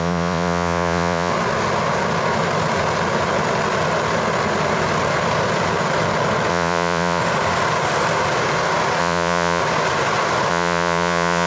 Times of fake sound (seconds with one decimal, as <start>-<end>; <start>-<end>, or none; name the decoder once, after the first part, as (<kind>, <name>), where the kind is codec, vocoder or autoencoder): 0.0-1.3 (vocoder, Vocos); 6.5-7.2; 9.0-9.6; 10.5-11.5